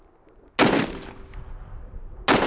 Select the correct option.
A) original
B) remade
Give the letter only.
A